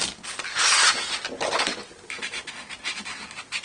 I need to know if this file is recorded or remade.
recorded